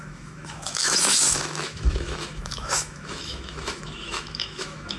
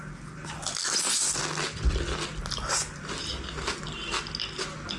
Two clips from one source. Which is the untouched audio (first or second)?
second